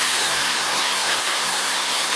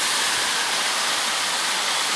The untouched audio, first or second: second